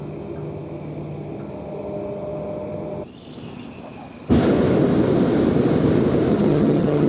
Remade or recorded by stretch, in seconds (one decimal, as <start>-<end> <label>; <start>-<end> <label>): 0.0-6.3 recorded; 6.3-7.1 remade